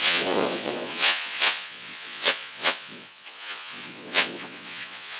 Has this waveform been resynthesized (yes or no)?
yes